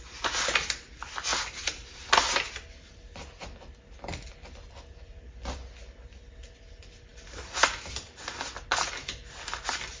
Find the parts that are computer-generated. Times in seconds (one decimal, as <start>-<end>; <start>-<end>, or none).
none